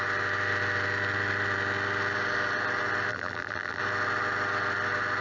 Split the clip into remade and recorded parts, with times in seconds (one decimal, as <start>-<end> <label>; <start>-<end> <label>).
0.0-3.1 recorded; 3.1-3.8 remade; 3.8-5.2 recorded